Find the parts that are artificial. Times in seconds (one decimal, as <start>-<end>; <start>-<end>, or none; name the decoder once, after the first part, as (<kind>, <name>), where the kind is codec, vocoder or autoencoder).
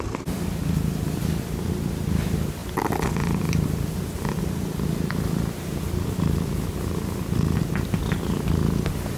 none